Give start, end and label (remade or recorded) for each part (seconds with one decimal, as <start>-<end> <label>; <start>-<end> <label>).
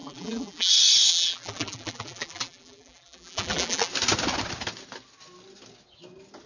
0.0-0.7 remade; 0.7-1.1 recorded; 1.1-3.9 remade; 3.9-6.5 recorded